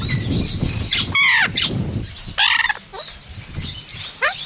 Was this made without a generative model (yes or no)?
yes